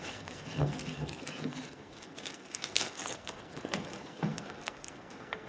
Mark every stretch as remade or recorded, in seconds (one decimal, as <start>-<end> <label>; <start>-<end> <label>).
0.0-5.5 remade